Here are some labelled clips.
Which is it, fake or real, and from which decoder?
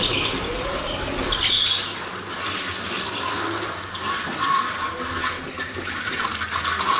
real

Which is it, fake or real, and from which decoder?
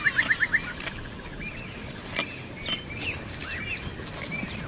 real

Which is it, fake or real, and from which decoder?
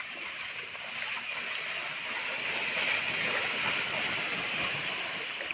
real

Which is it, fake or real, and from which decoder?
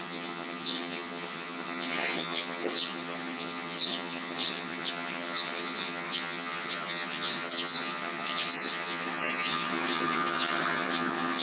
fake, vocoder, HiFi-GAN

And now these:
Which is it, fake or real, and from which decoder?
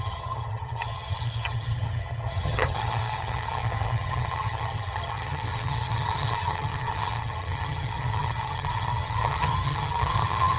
fake, vocoder, HiFi-GAN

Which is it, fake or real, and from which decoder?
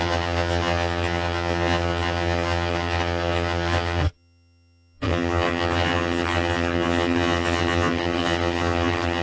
fake, vocoder, HiFi-GAN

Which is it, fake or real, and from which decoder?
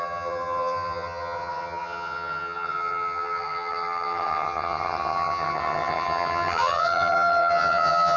fake, vocoder, HiFi-GAN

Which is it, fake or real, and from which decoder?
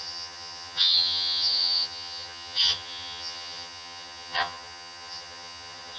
fake, vocoder, HiFi-GAN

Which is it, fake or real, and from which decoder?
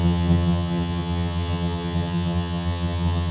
fake, vocoder, HiFi-GAN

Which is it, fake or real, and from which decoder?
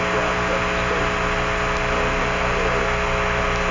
real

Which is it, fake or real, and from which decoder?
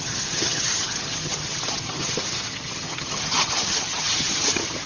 fake, vocoder, HiFi-GAN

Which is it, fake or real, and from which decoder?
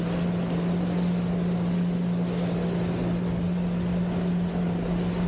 real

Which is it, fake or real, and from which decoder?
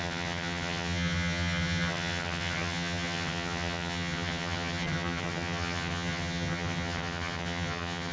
fake, vocoder, HiFi-GAN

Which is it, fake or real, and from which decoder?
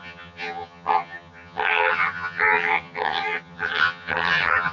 fake, vocoder, HiFi-GAN